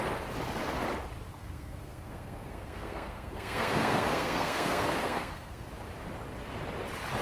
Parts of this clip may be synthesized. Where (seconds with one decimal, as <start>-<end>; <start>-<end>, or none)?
1.4-5.7